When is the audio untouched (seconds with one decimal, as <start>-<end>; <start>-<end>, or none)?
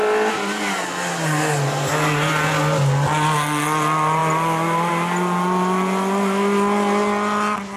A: 0.0-7.8